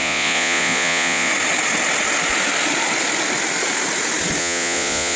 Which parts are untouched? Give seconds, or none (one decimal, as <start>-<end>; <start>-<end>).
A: 1.3-4.4